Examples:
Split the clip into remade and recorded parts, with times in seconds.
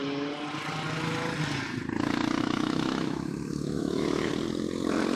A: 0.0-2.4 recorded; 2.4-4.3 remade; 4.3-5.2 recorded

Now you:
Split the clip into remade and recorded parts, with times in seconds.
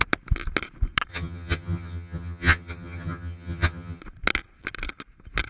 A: 0.0-1.1 recorded; 1.1-4.0 remade; 4.0-5.5 recorded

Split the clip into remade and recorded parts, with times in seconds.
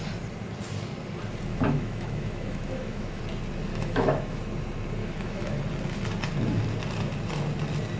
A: 0.0-1.5 recorded; 1.5-3.2 remade; 3.2-3.7 recorded; 3.7-4.4 remade; 4.4-5.0 recorded; 5.0-5.6 remade; 5.6-8.0 recorded